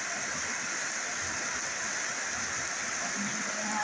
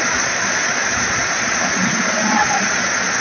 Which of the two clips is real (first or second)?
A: first